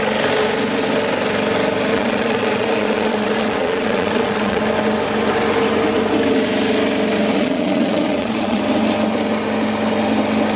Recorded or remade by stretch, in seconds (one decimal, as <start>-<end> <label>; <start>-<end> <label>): 0.0-1.9 recorded; 1.9-4.6 remade; 4.6-7.3 recorded; 7.3-8.6 remade; 8.6-10.6 recorded